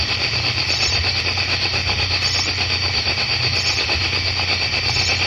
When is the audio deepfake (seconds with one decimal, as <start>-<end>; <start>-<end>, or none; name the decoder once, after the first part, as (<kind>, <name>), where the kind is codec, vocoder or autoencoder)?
0.0-1.8 (vocoder, BigVGAN v2)